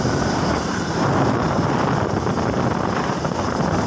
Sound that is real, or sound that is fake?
real